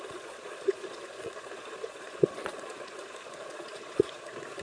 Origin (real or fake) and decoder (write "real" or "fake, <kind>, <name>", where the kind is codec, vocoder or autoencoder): fake, vocoder, Vocos